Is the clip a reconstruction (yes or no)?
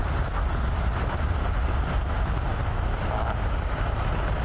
no